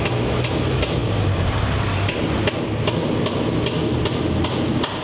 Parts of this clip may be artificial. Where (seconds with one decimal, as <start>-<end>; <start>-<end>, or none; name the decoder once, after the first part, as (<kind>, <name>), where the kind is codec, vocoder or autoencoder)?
none